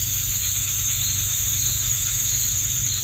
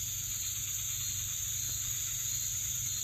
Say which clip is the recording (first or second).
second